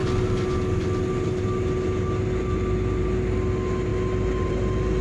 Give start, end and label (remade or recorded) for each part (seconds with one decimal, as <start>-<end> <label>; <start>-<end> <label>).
0.0-5.0 recorded